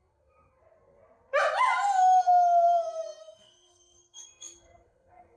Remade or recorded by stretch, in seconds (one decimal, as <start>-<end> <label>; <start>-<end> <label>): 0.0-0.6 remade; 0.6-3.2 recorded; 3.2-5.4 remade